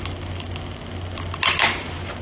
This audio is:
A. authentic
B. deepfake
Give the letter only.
A